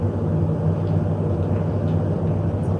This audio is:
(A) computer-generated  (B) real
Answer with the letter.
B